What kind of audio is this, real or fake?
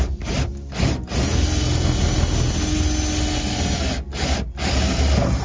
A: real